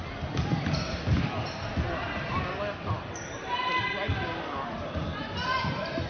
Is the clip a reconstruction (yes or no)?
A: no